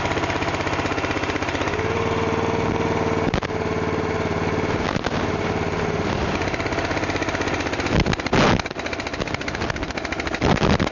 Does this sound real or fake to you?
real